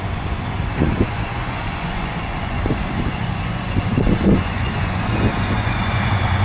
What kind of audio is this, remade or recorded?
remade